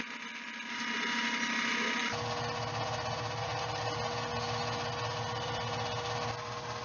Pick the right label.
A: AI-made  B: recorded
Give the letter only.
B